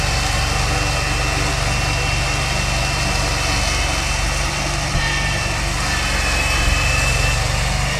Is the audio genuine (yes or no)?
yes